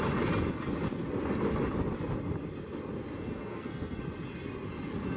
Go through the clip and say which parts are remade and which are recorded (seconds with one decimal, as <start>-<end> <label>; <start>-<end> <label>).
0.0-3.4 recorded; 3.4-4.0 remade; 4.0-5.2 recorded